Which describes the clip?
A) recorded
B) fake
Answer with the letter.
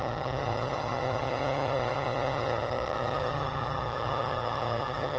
B